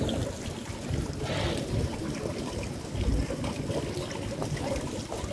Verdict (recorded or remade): recorded